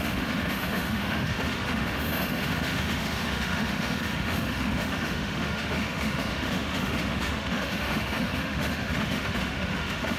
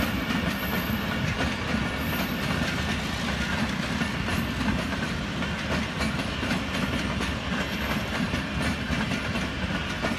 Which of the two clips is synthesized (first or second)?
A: first